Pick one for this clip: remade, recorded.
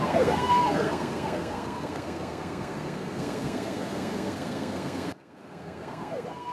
remade